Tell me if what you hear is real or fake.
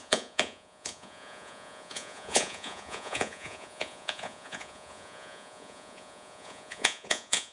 fake